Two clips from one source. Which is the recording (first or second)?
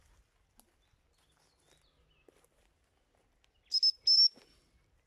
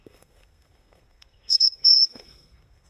first